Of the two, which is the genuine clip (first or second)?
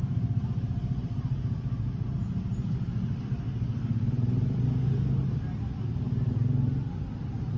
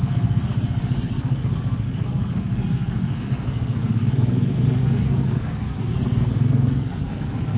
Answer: first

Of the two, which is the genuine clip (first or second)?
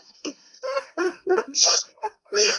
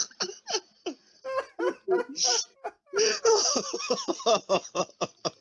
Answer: second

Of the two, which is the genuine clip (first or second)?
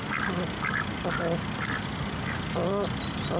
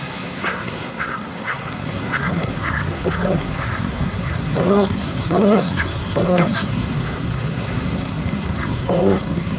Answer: first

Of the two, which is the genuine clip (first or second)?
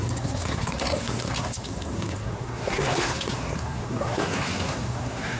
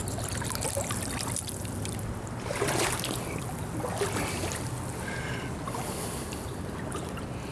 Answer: second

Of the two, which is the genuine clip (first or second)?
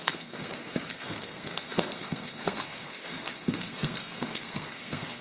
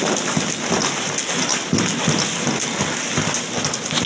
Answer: second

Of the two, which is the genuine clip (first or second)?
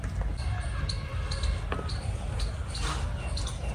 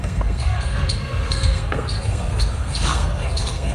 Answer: first